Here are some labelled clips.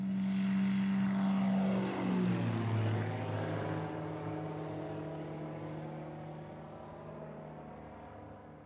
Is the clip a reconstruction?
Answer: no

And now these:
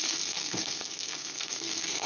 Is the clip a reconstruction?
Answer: yes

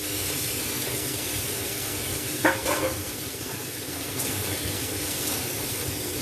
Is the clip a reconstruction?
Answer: yes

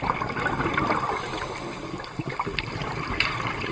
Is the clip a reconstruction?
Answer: no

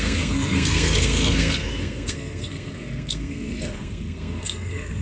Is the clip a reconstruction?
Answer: yes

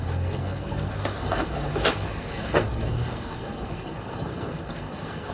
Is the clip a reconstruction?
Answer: yes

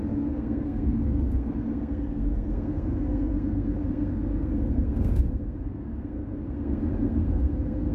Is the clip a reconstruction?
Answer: yes